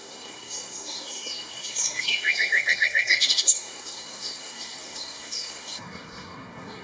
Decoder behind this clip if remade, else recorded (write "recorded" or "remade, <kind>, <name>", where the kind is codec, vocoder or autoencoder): remade, codec, SNAC